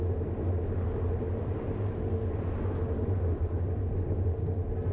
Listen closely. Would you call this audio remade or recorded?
recorded